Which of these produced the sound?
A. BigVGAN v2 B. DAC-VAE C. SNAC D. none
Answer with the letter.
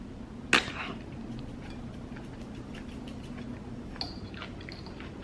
D